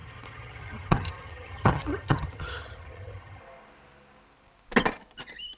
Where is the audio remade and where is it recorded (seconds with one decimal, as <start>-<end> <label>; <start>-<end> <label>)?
0.0-3.4 remade; 3.4-5.6 recorded